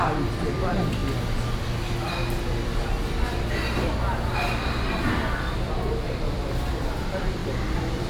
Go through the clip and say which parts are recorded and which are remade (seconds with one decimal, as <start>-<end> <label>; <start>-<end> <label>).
0.0-1.0 remade; 1.0-5.7 recorded; 5.7-8.1 remade